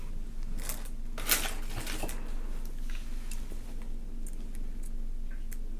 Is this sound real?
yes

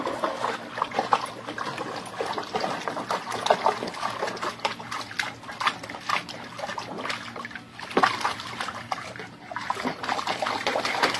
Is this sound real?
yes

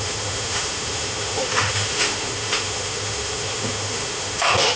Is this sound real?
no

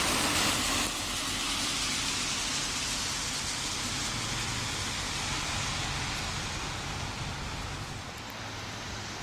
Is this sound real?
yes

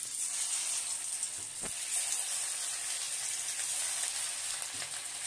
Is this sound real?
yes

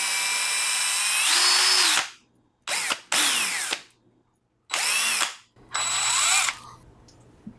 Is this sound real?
yes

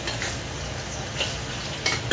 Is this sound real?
yes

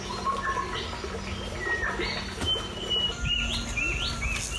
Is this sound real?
yes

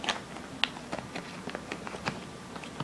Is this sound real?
yes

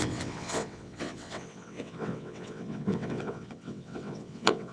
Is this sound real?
no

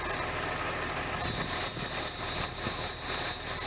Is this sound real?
yes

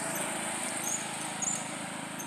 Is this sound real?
no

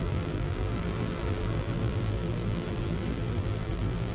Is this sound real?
no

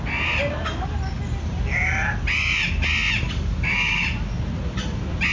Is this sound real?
yes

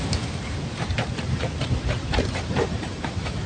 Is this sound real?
no